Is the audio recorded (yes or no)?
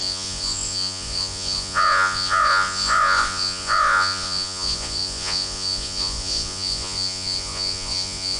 no